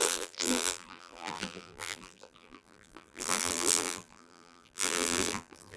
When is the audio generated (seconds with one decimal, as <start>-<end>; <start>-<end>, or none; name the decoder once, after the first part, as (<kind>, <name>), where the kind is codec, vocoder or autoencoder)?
0.0-5.8 (vocoder, BigVGAN v2)